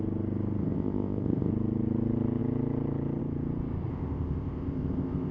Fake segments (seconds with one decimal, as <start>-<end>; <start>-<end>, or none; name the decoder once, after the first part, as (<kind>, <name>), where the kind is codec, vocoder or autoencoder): 0.6-1.5 (codec, ZipCodec); 3.9-5.3